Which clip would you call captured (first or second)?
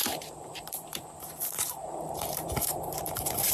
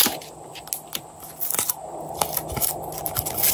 second